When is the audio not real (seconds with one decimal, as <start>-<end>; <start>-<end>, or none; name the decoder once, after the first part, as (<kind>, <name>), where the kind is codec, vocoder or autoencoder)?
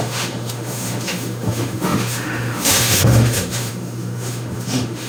0.0-5.1 (autoencoder, DAC-VAE)